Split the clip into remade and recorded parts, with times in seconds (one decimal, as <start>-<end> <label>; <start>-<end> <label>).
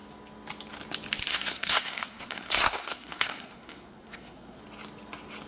0.0-1.3 recorded; 1.3-4.6 remade; 4.6-5.5 recorded